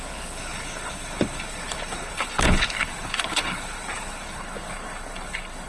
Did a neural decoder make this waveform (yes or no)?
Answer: yes